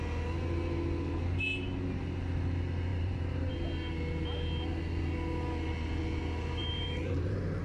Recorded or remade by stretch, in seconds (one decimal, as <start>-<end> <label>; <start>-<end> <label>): 0.0-2.9 recorded; 2.9-3.5 remade; 3.5-6.6 recorded; 6.6-7.6 remade

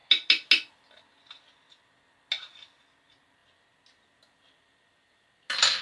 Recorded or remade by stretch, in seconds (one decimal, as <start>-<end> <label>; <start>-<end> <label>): 0.0-5.8 recorded

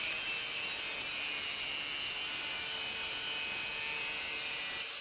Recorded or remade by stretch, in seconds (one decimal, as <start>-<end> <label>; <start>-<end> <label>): 0.0-5.0 recorded

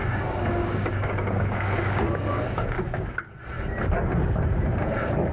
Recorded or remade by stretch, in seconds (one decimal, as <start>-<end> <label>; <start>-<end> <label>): 0.0-3.2 remade; 3.2-5.3 recorded

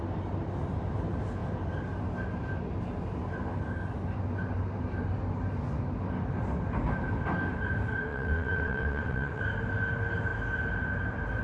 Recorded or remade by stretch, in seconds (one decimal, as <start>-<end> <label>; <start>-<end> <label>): 0.0-8.1 recorded; 8.1-9.4 remade; 9.4-11.4 recorded

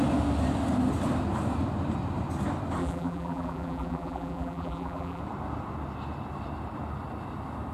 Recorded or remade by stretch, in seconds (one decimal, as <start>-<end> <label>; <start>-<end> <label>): 0.0-2.8 recorded; 2.8-5.2 remade; 5.2-7.7 recorded

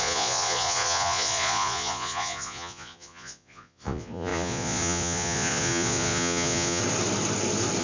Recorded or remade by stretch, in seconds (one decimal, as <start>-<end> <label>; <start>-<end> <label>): 0.0-6.8 remade; 6.8-7.8 recorded